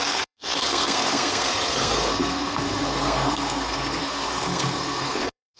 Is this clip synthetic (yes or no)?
yes